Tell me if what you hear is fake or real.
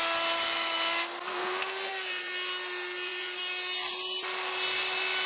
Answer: real